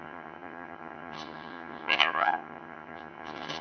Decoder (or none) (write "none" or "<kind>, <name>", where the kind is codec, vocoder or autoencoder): vocoder, HiFi-GAN